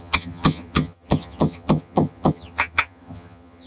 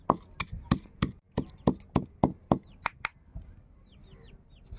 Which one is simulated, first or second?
first